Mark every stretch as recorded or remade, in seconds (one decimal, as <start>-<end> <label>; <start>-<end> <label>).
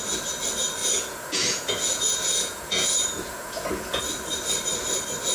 0.0-0.8 recorded; 0.8-4.0 remade; 4.0-5.3 recorded